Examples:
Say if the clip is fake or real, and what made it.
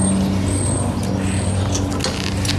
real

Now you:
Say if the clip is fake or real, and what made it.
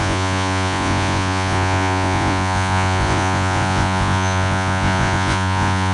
fake, vocoder, Vocos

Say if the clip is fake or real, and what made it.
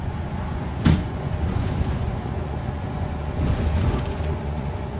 fake, vocoder, Vocos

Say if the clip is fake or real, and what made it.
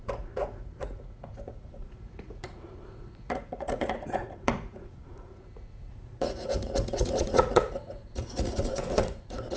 fake, vocoder, Vocos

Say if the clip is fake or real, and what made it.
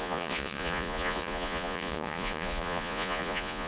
fake, vocoder, Vocos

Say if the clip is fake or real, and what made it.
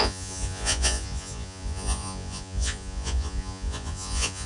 fake, vocoder, Vocos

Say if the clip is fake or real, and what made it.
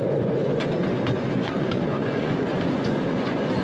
fake, vocoder, Vocos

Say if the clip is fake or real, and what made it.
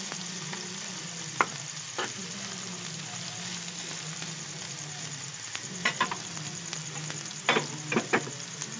real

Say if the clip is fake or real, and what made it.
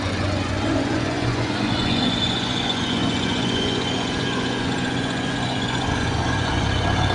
fake, vocoder, Vocos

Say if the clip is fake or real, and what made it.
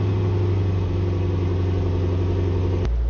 real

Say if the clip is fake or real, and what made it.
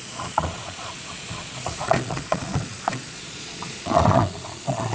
fake, vocoder, Vocos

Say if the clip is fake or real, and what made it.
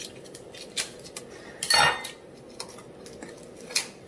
real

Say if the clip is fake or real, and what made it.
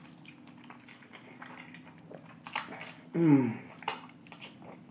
real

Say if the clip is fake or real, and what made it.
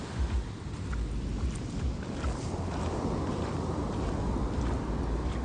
real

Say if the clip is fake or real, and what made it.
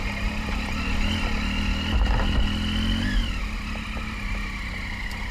real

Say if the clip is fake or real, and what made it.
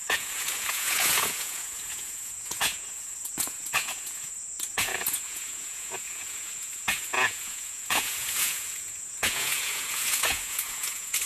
fake, vocoder, Vocos